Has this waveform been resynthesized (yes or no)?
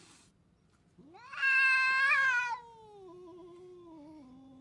no